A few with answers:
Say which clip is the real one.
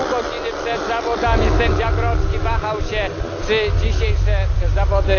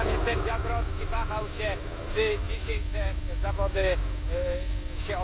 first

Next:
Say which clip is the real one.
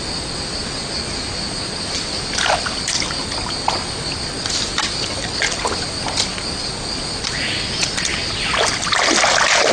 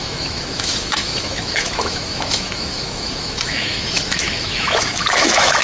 first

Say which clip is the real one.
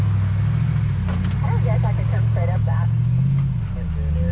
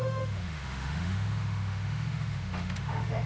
first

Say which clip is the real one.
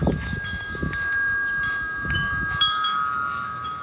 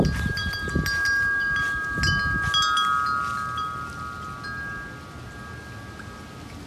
second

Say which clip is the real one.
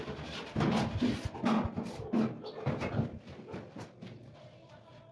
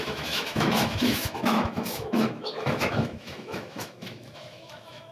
first